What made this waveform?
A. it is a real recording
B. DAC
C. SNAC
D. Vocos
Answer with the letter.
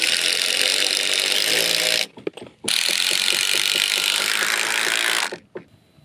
A